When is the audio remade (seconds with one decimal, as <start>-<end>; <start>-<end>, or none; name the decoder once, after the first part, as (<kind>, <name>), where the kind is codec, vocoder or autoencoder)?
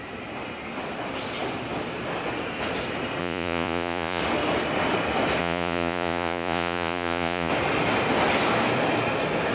3.2-4.2 (vocoder, Vocos); 5.4-7.5